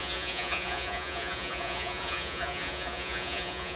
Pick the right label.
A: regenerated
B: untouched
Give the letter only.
A